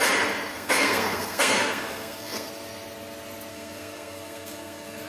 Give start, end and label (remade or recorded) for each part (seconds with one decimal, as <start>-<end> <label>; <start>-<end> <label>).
0.0-0.5 recorded; 0.5-2.5 remade; 2.5-3.5 recorded; 3.5-5.1 remade